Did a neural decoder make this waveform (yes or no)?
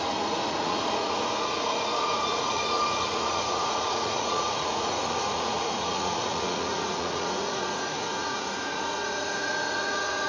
yes